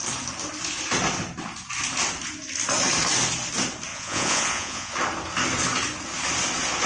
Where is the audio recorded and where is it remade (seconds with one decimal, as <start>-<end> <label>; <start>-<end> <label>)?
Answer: 0.0-3.9 recorded; 3.9-4.9 remade; 4.9-6.9 recorded